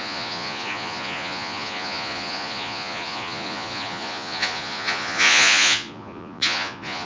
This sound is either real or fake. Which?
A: fake